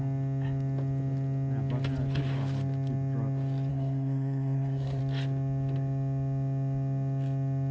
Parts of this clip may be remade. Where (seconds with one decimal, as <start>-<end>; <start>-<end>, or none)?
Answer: 3.7-5.0